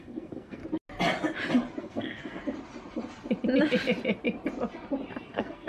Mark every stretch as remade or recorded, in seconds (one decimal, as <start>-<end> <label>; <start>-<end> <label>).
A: 0.0-0.6 remade; 0.6-1.8 recorded; 1.8-2.4 remade; 2.4-5.2 recorded; 5.2-5.7 remade